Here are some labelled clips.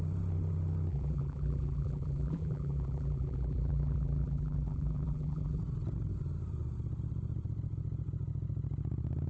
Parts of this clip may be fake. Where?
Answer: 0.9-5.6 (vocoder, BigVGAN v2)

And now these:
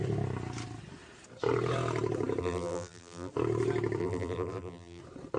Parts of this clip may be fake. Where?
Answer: 2.4-3.3 (vocoder, BigVGAN v2); 4.0-5.0

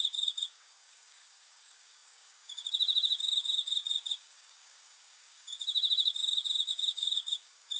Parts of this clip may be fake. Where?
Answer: 0.0-7.8 (codec, DAC)

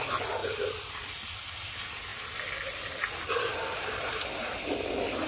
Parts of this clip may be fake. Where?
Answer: 0.4-1.0 (vocoder, BigVGAN v2)